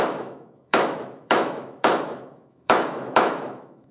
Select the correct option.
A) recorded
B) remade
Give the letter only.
B